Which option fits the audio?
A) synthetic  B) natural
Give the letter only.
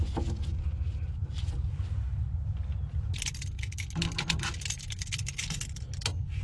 B